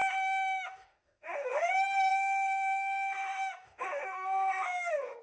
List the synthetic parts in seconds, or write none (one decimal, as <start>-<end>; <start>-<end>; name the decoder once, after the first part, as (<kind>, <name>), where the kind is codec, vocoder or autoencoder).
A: 0.0-1.7 (autoencoder, DAC-VAE); 2.1-5.2